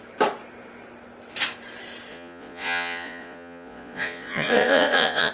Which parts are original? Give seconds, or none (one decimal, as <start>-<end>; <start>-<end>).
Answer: 0.0-2.1